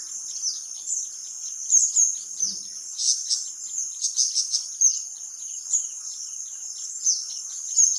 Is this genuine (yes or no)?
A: yes